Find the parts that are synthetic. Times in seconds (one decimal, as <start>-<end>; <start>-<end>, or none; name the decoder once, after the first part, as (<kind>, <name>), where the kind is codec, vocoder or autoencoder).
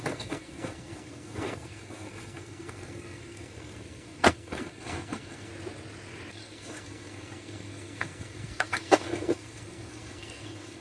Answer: 0.0-5.5 (codec, SNAC); 6.3-10.8